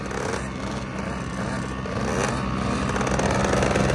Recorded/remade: recorded